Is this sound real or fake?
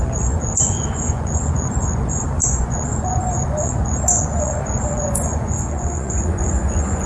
fake